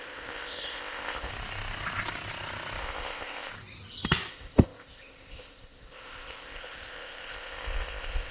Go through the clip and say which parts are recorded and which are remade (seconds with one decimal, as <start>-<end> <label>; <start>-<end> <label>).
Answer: 0.0-1.3 remade; 1.3-2.8 recorded; 2.8-3.5 remade; 3.5-4.3 recorded; 4.3-8.3 remade